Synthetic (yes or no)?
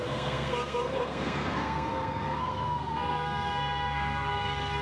yes